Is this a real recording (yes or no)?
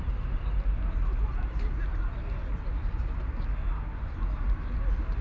yes